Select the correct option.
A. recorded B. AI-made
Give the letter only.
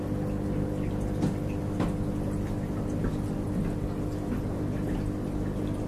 A